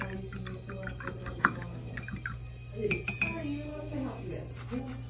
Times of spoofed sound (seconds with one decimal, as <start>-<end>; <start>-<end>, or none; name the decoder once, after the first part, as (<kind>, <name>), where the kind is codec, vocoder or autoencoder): 1.2-1.9 (codec, DAC); 3.7-4.3